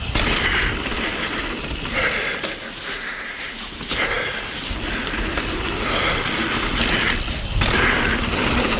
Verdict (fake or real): real